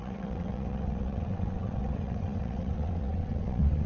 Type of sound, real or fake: fake